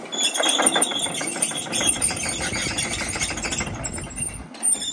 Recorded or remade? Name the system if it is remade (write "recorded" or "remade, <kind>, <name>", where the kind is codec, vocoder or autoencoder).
remade, vocoder, BigVGAN v2